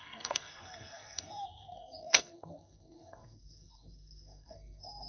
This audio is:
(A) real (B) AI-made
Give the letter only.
B